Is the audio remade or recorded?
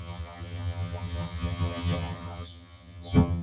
remade